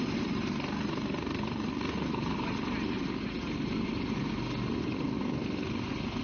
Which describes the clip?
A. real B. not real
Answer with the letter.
A